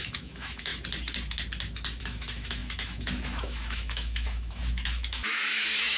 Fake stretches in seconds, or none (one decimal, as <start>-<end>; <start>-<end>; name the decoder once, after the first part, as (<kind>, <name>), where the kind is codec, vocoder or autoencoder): 0.0-0.7 (autoencoder, DAC-VAE); 2.0-6.0